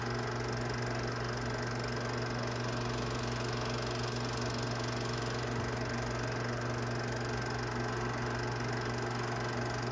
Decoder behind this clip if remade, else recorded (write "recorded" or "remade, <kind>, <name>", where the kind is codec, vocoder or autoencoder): recorded